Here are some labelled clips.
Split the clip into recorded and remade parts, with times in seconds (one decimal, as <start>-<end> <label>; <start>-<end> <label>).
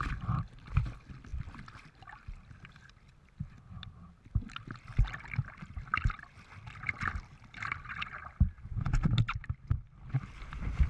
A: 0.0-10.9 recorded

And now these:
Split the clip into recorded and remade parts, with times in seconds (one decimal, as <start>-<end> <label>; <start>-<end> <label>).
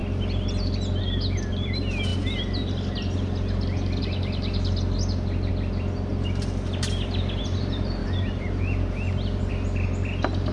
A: 0.0-10.5 recorded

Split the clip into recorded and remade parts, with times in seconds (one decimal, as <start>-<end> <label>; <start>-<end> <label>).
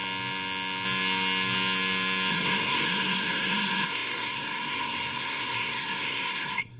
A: 0.0-2.3 recorded; 2.3-6.8 remade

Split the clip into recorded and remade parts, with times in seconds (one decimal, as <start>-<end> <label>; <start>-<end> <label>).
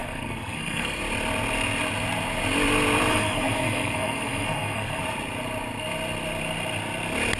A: 0.0-1.0 remade; 1.0-3.1 recorded; 3.1-5.0 remade; 5.0-7.4 recorded